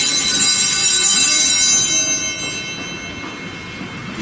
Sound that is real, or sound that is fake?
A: real